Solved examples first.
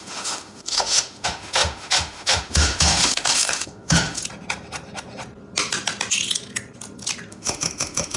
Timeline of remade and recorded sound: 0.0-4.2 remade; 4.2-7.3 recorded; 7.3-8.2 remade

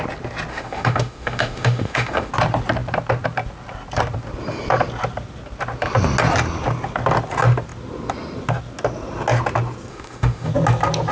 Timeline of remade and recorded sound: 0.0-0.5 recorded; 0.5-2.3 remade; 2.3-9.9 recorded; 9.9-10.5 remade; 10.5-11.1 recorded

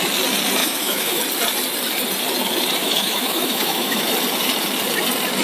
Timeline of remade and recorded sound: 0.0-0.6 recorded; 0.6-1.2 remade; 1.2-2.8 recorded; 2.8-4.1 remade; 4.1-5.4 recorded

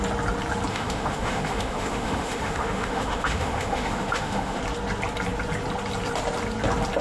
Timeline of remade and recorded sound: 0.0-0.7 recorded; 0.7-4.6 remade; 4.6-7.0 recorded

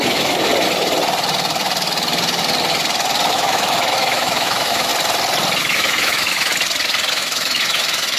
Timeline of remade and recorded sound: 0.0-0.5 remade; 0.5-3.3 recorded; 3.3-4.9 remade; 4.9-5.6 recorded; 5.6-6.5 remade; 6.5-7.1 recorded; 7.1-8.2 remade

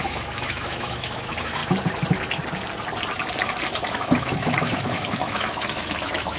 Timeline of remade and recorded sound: 0.0-1.6 remade; 1.6-3.9 recorded; 3.9-6.4 remade

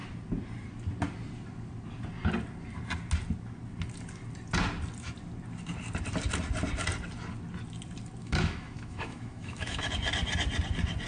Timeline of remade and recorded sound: 0.0-8.2 recorded; 8.2-9.9 remade; 9.9-11.1 recorded